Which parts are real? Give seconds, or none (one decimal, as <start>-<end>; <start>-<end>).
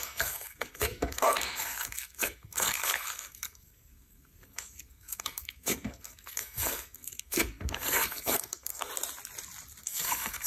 8.9-9.8